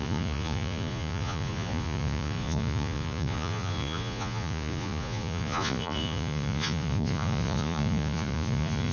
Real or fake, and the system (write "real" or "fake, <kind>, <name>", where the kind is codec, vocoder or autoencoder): fake, vocoder, Vocos